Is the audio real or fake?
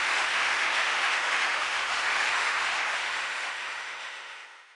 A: fake